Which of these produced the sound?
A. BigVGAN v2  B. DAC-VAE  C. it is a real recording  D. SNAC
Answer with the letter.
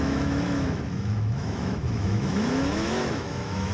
B